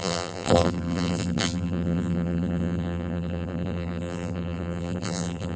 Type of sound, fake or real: fake